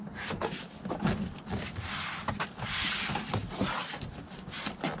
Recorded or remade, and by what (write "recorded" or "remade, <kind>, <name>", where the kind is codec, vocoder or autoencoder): recorded